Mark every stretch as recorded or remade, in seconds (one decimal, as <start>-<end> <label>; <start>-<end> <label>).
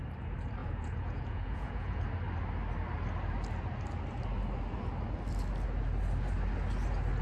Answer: 0.0-0.6 recorded; 0.6-2.0 remade; 2.0-7.2 recorded